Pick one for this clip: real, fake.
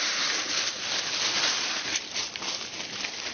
real